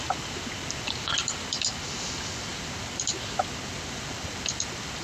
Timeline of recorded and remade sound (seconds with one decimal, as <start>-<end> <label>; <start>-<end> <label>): 0.0-5.0 recorded